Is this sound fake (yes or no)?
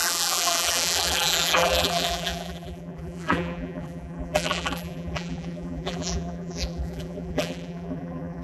yes